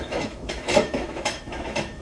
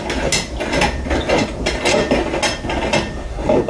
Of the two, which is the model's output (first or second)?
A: first